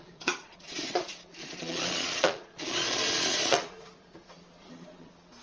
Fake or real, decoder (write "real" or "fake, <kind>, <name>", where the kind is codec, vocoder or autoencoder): fake, vocoder, Vocos